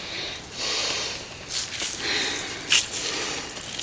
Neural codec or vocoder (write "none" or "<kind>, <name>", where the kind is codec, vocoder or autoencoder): none